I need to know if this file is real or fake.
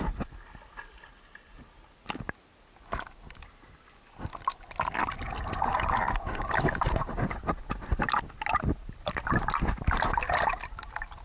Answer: real